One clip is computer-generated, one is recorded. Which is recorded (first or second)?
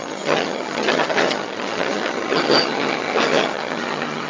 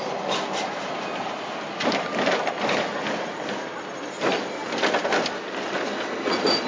second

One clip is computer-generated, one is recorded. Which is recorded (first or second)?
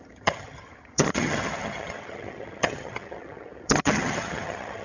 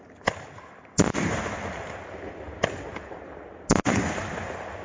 second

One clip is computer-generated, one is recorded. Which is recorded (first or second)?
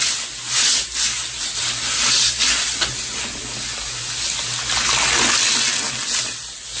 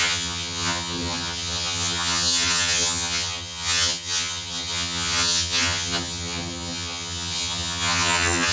first